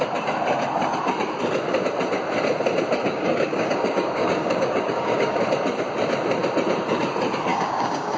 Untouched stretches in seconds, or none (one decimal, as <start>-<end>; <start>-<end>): 0.0-3.0; 5.4-7.5